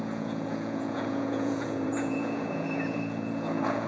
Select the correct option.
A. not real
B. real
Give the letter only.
A